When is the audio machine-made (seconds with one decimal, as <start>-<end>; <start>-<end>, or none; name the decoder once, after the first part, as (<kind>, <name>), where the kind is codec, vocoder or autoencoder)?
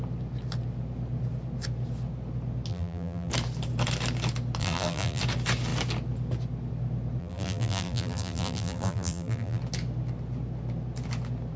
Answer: 2.7-3.3 (vocoder, BigVGAN v2); 4.6-5.2; 7.2-9.6